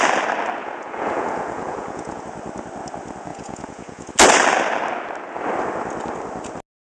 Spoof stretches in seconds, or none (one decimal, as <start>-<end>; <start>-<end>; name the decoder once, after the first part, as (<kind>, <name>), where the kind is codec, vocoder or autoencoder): 0.6-2.2 (vocoder, Vocos); 3.3-4.1

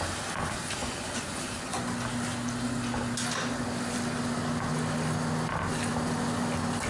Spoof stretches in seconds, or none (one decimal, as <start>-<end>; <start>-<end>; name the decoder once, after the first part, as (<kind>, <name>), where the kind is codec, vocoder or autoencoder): 0.8-1.8 (vocoder, Vocos)